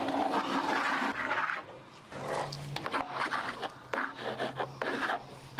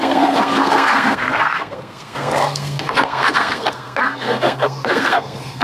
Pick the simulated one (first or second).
second